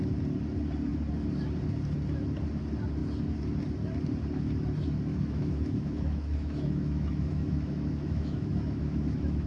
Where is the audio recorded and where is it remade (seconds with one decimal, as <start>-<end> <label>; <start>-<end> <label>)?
0.0-5.1 recorded; 5.1-9.5 remade